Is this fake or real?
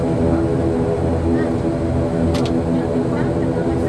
real